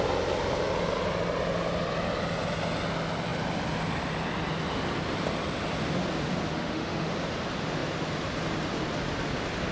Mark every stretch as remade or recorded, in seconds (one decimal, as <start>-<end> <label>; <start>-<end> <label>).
0.0-6.5 recorded; 6.5-7.1 remade; 7.1-9.7 recorded